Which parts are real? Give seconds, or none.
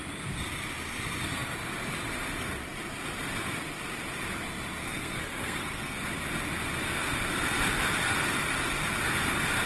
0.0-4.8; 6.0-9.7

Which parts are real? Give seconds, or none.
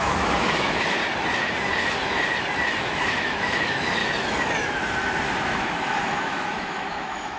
1.0-2.8; 4.0-5.6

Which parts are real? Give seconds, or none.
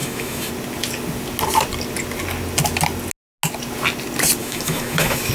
0.5-4.4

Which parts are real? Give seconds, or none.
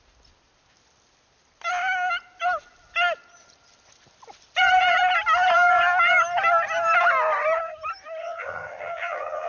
0.0-8.2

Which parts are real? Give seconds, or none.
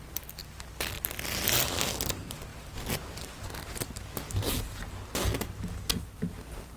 0.0-6.8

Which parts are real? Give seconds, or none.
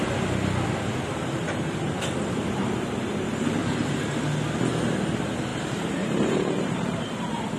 0.0-0.9; 2.7-3.6; 4.2-5.5; 7.0-7.6